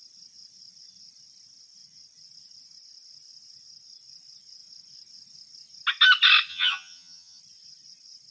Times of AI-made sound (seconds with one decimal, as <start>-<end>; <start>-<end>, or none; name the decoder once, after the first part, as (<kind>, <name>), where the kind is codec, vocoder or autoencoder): 6.5-7.4 (vocoder, HiFi-GAN)